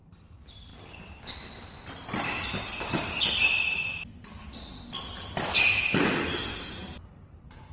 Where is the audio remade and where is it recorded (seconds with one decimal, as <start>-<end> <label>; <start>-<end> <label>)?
0.0-0.7 remade; 0.7-2.8 recorded; 2.8-3.9 remade; 3.9-7.0 recorded; 7.0-7.7 remade

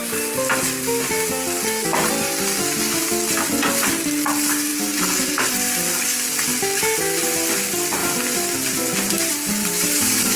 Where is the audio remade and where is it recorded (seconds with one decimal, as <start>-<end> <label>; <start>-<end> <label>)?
0.0-8.0 recorded; 8.0-10.4 remade

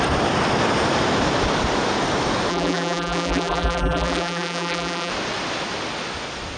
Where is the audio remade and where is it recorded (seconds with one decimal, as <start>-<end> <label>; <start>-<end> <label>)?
0.0-2.5 recorded; 2.5-5.1 remade; 5.1-6.6 recorded

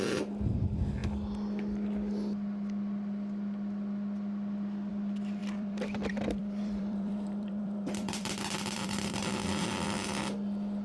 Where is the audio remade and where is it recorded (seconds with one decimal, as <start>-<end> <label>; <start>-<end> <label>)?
0.0-5.4 recorded; 5.4-9.1 remade; 9.1-10.8 recorded

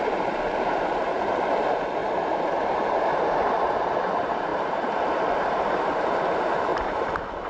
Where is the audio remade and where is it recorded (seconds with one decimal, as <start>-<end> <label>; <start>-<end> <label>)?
0.0-6.7 remade; 6.7-7.5 recorded

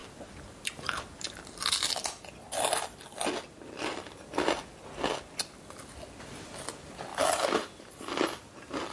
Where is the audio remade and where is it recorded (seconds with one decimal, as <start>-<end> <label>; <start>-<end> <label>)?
0.0-7.1 recorded; 7.1-7.9 remade; 7.9-8.9 recorded